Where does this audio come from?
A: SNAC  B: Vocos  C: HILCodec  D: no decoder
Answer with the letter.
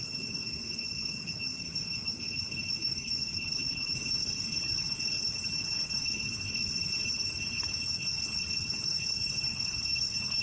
C